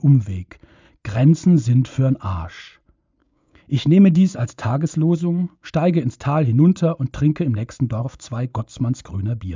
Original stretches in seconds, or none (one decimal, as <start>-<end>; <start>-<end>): 0.0-3.2; 5.7-8.0; 9.0-9.6